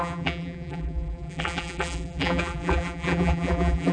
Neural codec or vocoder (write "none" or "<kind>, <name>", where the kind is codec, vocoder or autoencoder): vocoder, BigVGAN v2